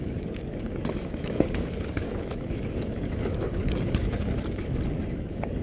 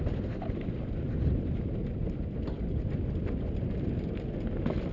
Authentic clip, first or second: second